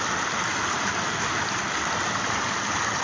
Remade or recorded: recorded